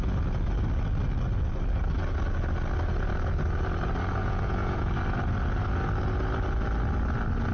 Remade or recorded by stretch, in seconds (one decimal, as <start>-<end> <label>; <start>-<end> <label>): 0.0-4.2 recorded; 4.2-4.9 remade; 4.9-7.5 recorded